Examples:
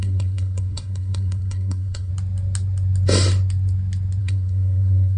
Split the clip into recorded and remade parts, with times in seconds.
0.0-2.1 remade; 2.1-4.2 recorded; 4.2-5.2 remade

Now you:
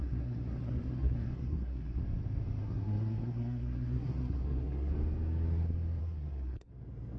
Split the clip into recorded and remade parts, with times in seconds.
0.0-2.0 remade; 2.0-2.6 recorded; 2.6-4.9 remade; 4.9-6.0 recorded; 6.0-6.7 remade; 6.7-7.2 recorded

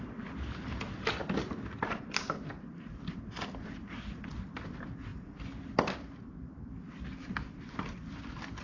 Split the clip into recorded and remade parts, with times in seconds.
0.0-8.6 recorded

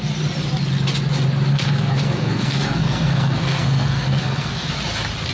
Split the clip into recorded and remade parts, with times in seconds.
0.0-1.5 recorded; 1.5-4.7 remade; 4.7-5.3 recorded

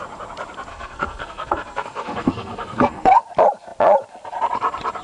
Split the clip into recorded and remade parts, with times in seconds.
0.0-0.7 recorded; 0.7-3.2 remade; 3.2-5.0 recorded

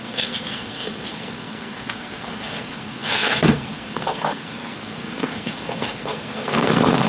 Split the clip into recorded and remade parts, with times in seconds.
0.0-7.1 remade

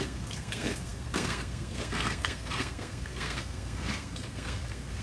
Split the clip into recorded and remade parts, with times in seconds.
0.0-5.0 remade

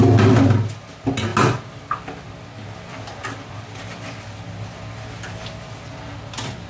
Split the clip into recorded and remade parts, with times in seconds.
0.0-6.7 recorded